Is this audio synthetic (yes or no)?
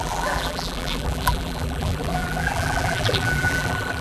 yes